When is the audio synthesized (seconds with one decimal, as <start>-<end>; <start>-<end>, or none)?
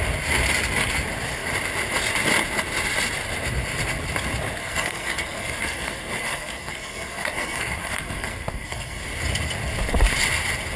4.6-9.0